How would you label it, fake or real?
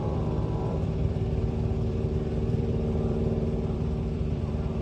fake